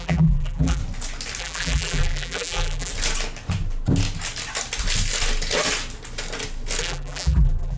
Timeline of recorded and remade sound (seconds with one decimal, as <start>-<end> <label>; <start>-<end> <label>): 0.0-0.8 remade; 0.8-1.4 recorded; 1.4-2.9 remade; 2.9-6.8 recorded; 6.8-7.8 remade